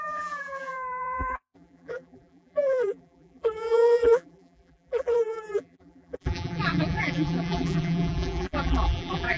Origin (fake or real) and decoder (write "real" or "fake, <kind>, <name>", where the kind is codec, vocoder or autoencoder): fake, vocoder, BigVGAN v2